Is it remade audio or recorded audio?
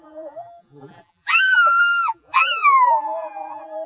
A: remade